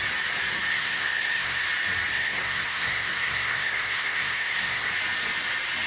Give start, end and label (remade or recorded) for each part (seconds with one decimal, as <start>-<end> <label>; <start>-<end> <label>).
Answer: 0.0-0.7 recorded; 0.7-1.6 remade; 1.6-2.1 recorded; 2.1-4.9 remade; 4.9-5.9 recorded